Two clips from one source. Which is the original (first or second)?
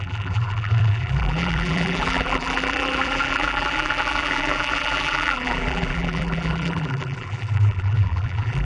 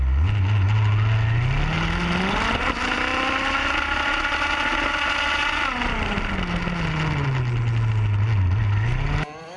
second